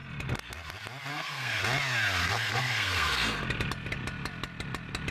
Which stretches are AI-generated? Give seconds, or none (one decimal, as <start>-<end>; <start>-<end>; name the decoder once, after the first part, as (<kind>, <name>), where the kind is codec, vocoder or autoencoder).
1.1-1.6 (codec, SNAC); 2.2-3.4